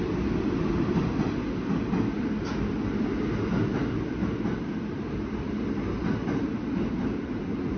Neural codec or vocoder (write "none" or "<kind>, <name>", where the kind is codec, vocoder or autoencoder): none